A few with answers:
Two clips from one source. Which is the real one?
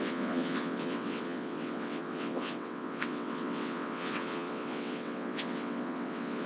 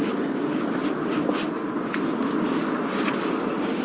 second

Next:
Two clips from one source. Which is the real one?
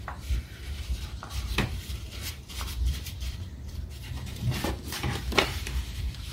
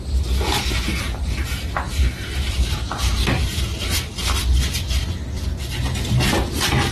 second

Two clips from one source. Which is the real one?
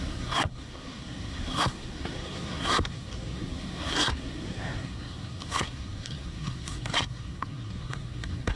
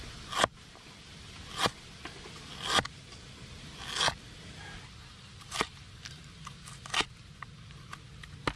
second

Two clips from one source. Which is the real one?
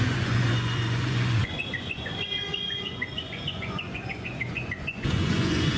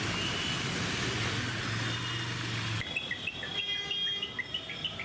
second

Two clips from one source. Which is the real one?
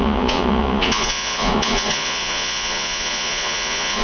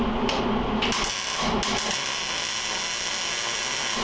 second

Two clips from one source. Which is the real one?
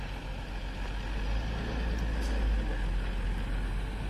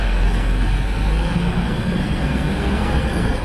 first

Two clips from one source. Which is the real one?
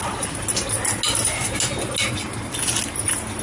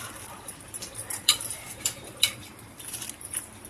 first